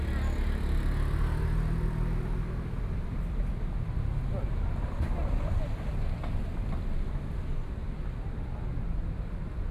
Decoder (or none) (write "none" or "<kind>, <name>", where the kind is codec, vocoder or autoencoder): none